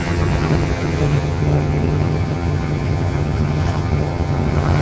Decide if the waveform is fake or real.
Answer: fake